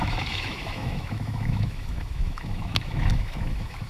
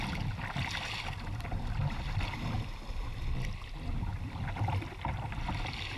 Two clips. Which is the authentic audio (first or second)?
second